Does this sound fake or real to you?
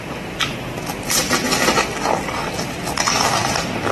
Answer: real